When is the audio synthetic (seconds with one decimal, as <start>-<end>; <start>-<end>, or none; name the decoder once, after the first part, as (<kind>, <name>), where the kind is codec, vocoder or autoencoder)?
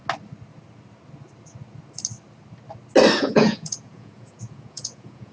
3.2-5.3 (vocoder, Vocos)